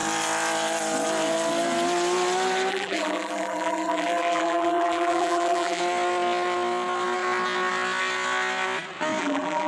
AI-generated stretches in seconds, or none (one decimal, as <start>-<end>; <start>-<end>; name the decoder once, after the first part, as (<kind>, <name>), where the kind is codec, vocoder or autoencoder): 2.7-5.8 (vocoder, BigVGAN v2); 9.2-9.7